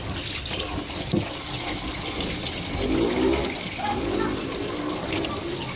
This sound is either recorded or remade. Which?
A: recorded